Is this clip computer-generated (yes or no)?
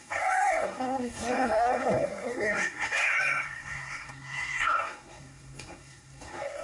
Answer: yes